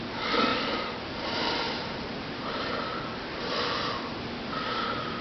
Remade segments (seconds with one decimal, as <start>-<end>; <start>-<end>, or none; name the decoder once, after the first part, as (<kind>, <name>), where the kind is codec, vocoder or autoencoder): 0.5-3.6 (vocoder, BigVGAN v2)